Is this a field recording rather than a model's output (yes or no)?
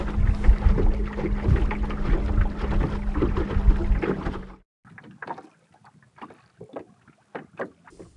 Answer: yes